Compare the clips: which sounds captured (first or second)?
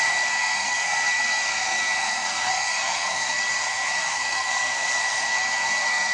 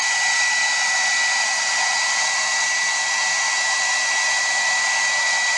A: second